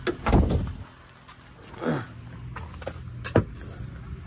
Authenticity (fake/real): real